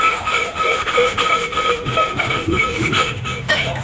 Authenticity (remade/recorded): remade